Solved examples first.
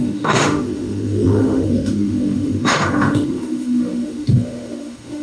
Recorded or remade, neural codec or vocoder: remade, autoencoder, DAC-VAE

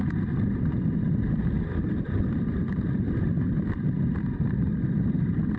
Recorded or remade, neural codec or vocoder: recorded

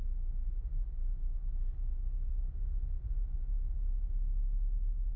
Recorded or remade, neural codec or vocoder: recorded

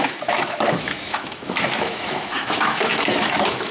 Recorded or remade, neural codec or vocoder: remade, autoencoder, DAC-VAE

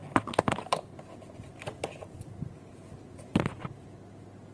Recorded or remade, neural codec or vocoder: recorded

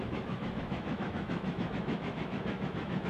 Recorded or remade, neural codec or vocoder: remade, autoencoder, DAC-VAE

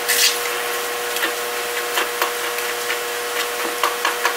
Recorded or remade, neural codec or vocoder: recorded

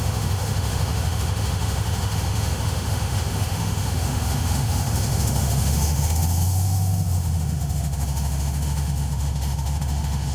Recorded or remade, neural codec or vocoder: remade, autoencoder, DAC-VAE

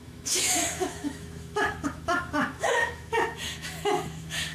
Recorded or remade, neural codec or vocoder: remade, autoencoder, DAC-VAE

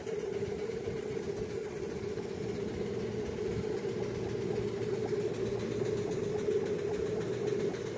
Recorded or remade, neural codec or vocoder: recorded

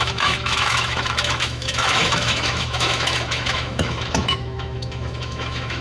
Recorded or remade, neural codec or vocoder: remade, autoencoder, DAC-VAE